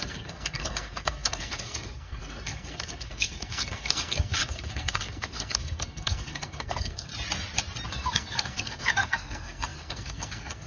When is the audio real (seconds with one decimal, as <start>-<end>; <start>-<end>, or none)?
7.1-7.9